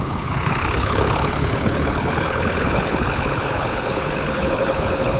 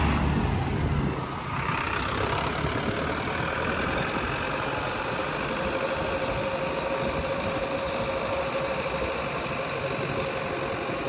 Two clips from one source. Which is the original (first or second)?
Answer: second